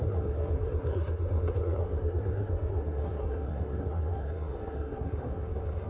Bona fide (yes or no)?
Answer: no